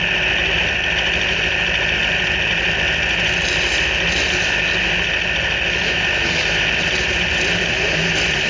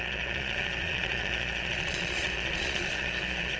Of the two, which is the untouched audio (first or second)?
first